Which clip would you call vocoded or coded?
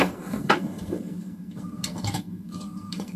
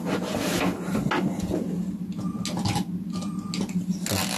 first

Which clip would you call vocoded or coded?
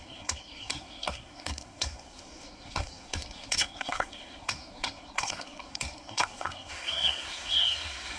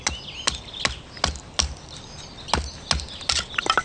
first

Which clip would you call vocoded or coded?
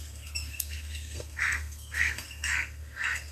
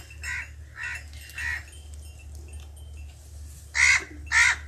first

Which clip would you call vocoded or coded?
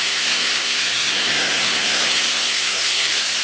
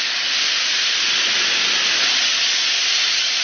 first